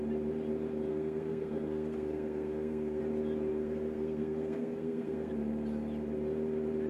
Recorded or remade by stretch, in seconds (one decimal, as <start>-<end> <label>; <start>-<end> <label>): 0.0-0.9 recorded; 0.9-3.0 remade; 3.0-3.5 recorded; 3.5-5.3 remade; 5.3-6.9 recorded